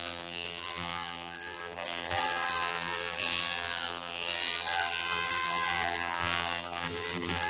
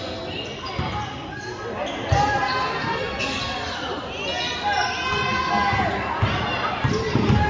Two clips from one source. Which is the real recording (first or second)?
second